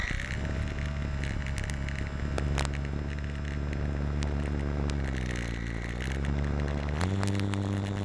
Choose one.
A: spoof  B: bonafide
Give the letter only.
B